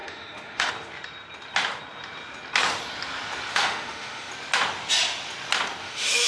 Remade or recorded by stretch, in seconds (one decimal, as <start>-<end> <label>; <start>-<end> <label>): 0.0-0.7 remade; 0.7-3.5 recorded; 3.5-4.3 remade; 4.3-5.8 recorded; 5.8-6.3 remade